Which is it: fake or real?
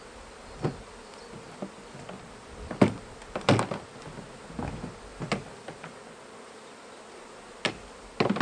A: real